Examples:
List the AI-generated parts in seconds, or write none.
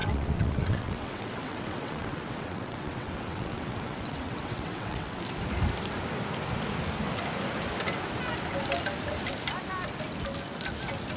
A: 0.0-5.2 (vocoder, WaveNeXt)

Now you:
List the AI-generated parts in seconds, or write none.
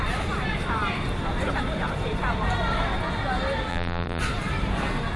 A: 3.7-4.2 (vocoder, BigVGAN v2)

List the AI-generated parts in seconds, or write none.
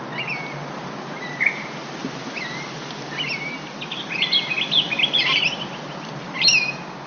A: 2.0-5.9 (vocoder, BigVGAN v2)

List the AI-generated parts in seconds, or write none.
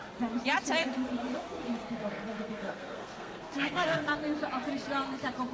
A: 0.8-4.1 (codec, SNAC)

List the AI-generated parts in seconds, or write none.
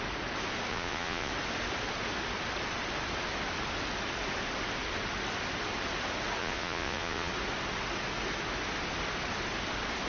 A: 0.7-1.3 (vocoder, Vocos); 6.4-7.3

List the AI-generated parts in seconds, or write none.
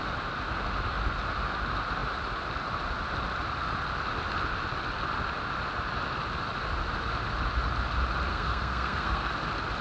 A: 8.3-9.3 (codec, SNAC)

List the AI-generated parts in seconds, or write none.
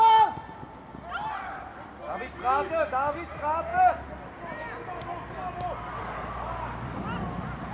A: none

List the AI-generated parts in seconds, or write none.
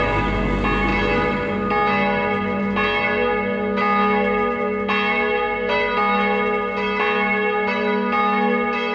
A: none